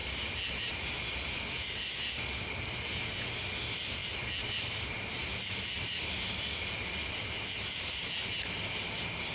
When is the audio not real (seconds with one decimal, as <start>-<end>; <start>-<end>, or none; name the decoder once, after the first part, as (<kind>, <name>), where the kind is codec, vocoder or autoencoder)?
none